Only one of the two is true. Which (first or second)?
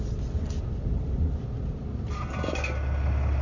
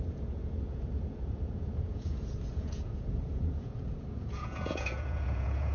first